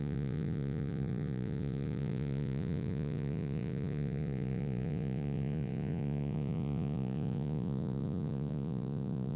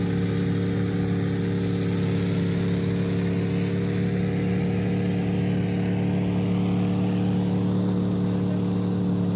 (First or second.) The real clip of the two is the second